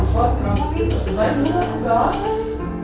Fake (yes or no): no